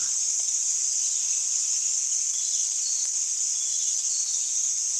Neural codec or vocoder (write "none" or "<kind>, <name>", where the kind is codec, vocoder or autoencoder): none